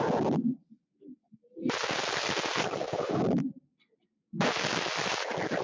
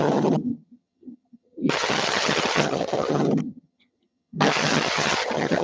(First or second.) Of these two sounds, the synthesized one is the second